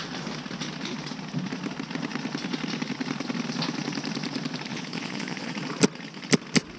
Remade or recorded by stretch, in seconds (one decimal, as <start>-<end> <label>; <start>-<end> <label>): 0.0-4.7 recorded; 4.7-5.5 remade; 5.5-6.8 recorded